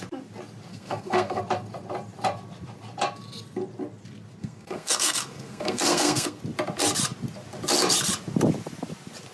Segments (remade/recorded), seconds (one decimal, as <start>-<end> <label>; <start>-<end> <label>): 0.0-0.7 recorded; 0.7-1.4 remade; 1.4-4.4 recorded; 4.4-6.4 remade; 6.4-9.3 recorded